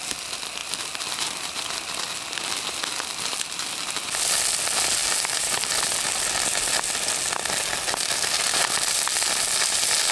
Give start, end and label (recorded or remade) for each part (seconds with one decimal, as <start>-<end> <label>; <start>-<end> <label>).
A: 0.0-5.0 recorded; 5.0-5.5 remade; 5.5-10.1 recorded